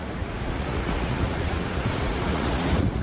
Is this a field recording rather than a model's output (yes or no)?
no